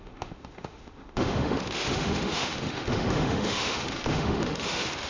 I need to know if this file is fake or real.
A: fake